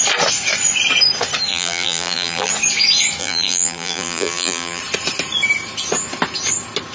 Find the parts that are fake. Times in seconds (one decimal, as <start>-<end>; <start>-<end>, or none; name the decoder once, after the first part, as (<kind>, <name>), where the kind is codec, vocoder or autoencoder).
1.5-2.5 (vocoder, BigVGAN v2); 3.2-4.8